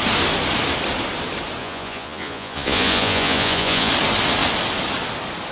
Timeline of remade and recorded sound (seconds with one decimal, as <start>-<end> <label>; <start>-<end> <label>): 0.0-1.6 recorded; 1.6-3.9 remade; 3.9-5.5 recorded